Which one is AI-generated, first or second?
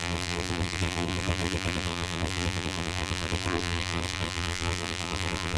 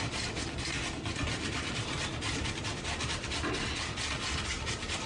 first